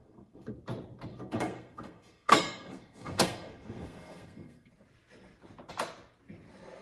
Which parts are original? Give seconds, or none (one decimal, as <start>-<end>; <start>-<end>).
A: 0.6-1.1; 4.7-6.8